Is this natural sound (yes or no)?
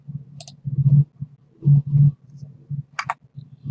yes